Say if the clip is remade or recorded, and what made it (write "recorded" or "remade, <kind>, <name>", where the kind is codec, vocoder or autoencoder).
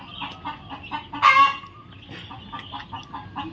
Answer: recorded